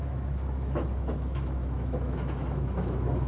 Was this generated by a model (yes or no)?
yes